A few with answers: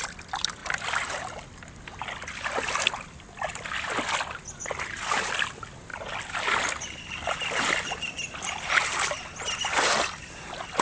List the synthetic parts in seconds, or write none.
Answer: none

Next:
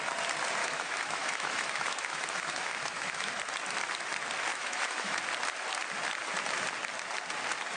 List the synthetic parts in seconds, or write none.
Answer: 0.6-3.3 (autoencoder, DAC-VAE); 4.5-5.2

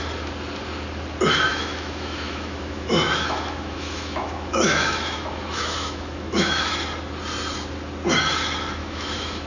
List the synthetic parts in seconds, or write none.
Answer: 1.5-6.7 (autoencoder, DAC-VAE); 8.8-9.5

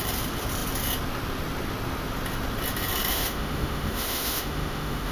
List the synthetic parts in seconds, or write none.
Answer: 3.1-5.1 (autoencoder, DAC-VAE)

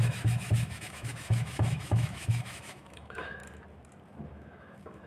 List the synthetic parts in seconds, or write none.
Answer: 0.0-3.4 (autoencoder, DAC-VAE); 4.3-5.1

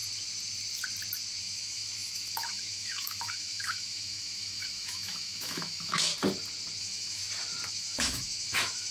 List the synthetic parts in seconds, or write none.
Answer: 1.4-6.1 (autoencoder, DAC-VAE); 6.8-7.2; 7.7-8.9